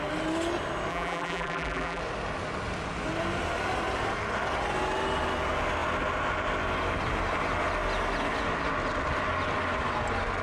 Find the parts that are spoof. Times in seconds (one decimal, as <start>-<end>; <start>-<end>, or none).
0.9-2.0